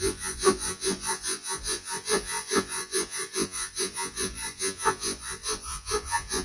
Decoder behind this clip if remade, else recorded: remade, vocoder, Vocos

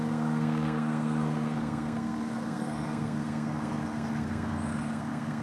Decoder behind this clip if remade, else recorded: remade, codec, SNAC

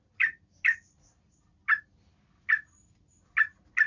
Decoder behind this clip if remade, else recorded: recorded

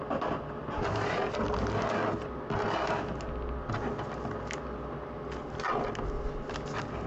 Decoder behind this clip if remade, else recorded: recorded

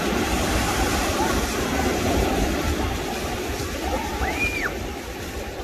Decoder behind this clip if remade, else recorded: remade, vocoder, BigVGAN v2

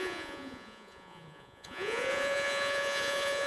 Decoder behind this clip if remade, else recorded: remade, vocoder, Vocos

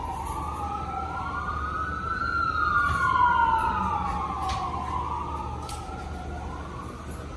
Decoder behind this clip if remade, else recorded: recorded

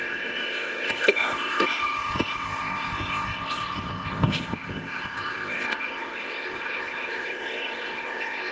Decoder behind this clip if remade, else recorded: remade, codec, ZipCodec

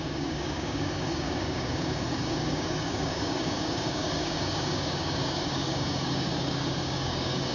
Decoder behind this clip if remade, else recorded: remade, codec, DAC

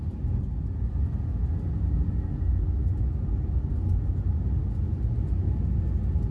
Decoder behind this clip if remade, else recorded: recorded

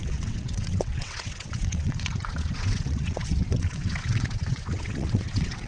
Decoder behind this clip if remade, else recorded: remade, vocoder, WaveNeXt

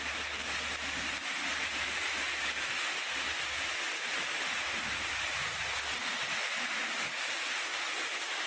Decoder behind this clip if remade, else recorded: recorded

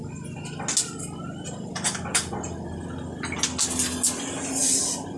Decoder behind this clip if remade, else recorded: recorded